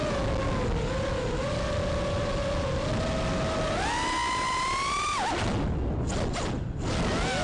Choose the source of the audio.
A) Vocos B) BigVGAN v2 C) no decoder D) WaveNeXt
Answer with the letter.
C